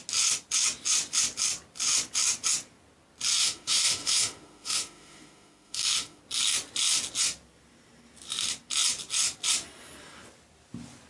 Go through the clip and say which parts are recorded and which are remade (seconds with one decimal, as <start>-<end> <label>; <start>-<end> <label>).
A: 0.0-3.4 recorded; 3.4-6.2 remade; 6.2-11.1 recorded